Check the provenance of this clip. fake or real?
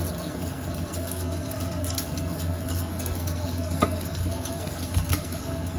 fake